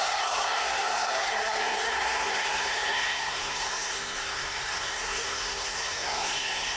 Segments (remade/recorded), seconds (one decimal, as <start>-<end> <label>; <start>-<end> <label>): 0.0-6.8 remade